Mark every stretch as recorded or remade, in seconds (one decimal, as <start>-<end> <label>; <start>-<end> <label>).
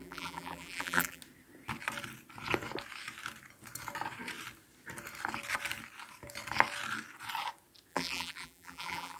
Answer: 0.0-1.2 remade; 1.2-7.9 recorded; 7.9-9.2 remade